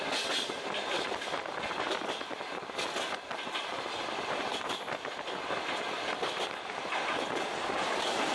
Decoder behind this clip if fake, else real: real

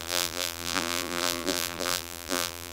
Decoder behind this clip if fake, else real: fake, vocoder, BigVGAN v2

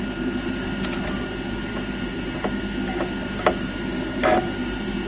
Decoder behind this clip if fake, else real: real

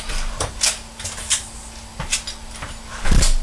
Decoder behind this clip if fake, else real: real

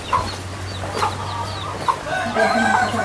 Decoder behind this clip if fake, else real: real